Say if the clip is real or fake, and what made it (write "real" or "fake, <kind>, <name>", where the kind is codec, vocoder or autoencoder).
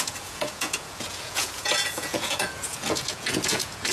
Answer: fake, vocoder, Vocos